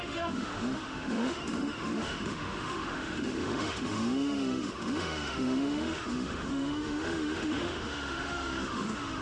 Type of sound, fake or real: fake